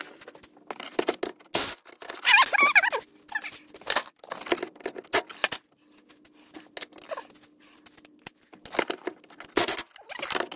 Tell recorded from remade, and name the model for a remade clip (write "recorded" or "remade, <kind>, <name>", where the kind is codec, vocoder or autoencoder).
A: recorded